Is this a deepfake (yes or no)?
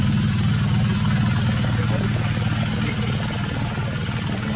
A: no